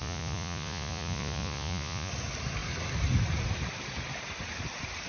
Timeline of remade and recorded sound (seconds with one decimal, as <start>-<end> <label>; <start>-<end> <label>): 0.0-2.1 remade; 2.1-5.1 recorded